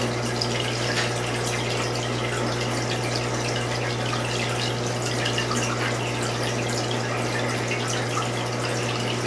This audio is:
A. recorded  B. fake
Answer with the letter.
A